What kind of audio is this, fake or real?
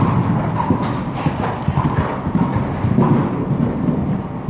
real